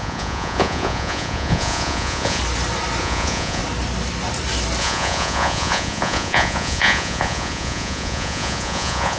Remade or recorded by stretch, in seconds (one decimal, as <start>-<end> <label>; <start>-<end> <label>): 0.0-2.4 remade; 2.4-3.0 recorded; 3.0-3.6 remade; 3.6-4.8 recorded; 4.8-9.2 remade